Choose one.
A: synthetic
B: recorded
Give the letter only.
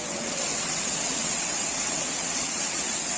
A